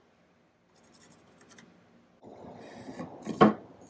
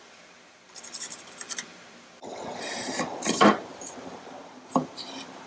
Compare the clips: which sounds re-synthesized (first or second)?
second